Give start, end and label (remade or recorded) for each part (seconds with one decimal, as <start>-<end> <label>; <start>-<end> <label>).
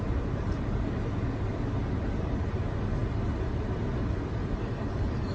0.0-5.3 recorded